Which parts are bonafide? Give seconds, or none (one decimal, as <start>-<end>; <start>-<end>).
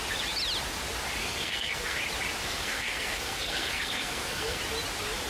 0.0-1.2; 2.0-2.4; 4.6-5.3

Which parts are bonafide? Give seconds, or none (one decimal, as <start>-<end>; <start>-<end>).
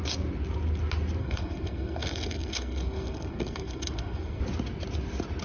0.0-1.2; 4.4-5.4